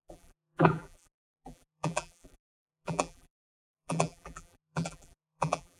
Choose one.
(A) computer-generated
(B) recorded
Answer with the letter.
A